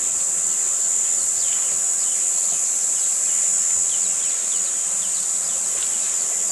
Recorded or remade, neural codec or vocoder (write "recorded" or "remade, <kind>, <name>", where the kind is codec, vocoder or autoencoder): recorded